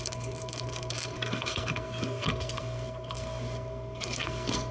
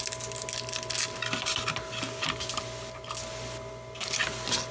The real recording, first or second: second